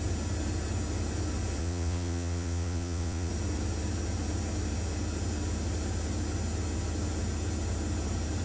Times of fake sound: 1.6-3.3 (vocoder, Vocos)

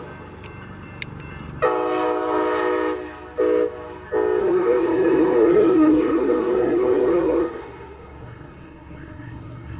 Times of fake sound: 4.4-9.8 (codec, SNAC)

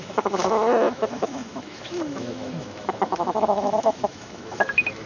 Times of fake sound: 0.0-5.1 (autoencoder, DAC-VAE)